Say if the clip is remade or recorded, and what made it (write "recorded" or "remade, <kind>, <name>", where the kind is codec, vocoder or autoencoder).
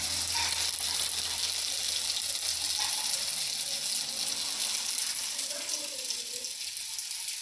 recorded